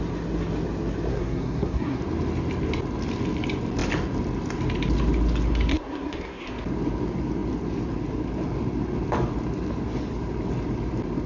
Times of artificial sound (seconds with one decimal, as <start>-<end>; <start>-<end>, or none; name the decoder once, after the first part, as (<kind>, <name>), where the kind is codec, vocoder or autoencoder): 1.1-2.0 (codec, SNAC); 5.7-6.5